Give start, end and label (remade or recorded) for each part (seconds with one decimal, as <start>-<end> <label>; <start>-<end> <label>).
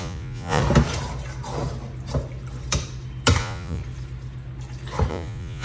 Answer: 0.0-0.6 remade; 0.6-3.4 recorded; 3.4-3.8 remade; 3.8-5.1 recorded; 5.1-5.6 remade